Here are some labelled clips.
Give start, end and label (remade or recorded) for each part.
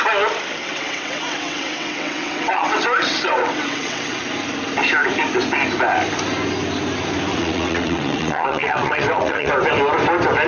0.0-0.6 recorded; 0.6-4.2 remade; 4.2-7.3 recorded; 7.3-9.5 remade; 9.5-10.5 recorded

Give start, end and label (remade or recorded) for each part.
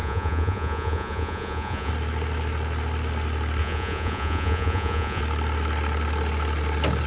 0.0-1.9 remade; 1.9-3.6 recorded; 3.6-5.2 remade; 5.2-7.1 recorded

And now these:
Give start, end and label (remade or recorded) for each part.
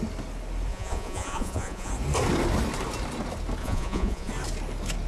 0.0-0.7 recorded; 0.7-1.9 remade; 1.9-3.6 recorded; 3.6-4.3 remade; 4.3-5.1 recorded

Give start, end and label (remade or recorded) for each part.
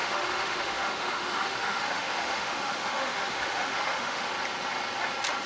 0.0-4.3 remade; 4.3-5.5 recorded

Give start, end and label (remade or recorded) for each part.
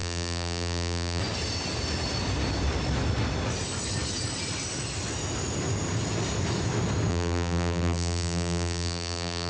0.0-1.2 remade; 1.2-7.1 recorded; 7.1-9.5 remade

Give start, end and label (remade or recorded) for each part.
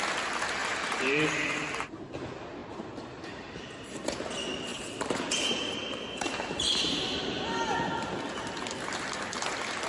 0.0-0.6 recorded; 0.6-1.2 remade; 1.2-2.6 recorded; 2.6-3.9 remade; 3.9-4.7 recorded; 4.7-6.8 remade; 6.8-9.9 recorded